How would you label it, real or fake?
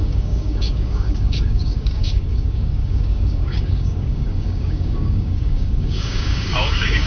fake